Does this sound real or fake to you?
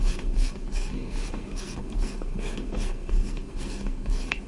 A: fake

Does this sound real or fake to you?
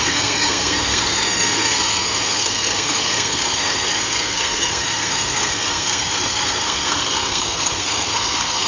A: fake